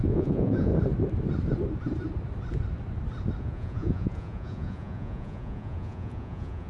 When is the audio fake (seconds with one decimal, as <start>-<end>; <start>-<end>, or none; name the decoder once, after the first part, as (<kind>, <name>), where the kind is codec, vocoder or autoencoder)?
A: 0.0-0.7 (vocoder, Vocos); 3.4-6.7